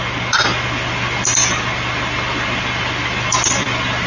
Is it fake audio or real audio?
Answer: real